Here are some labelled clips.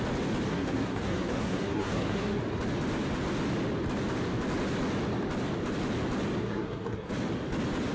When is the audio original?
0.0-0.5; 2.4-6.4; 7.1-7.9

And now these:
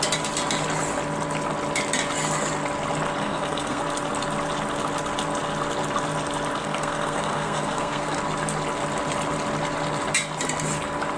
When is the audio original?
0.0-3.2; 3.8-6.6; 8.2-11.2

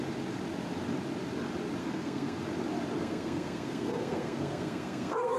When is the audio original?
0.0-1.8; 2.4-3.0

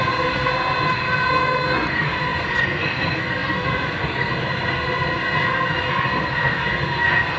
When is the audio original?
none